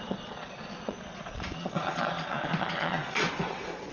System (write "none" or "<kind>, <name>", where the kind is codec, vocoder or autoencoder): vocoder, Vocos